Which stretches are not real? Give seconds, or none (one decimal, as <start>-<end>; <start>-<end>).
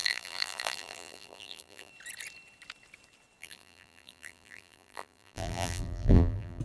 0.0-1.9; 3.4-6.6